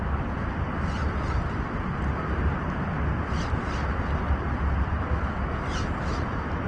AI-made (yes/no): no